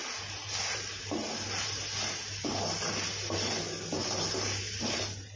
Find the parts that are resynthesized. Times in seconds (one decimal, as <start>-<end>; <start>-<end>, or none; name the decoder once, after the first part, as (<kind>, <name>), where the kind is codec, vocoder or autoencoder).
none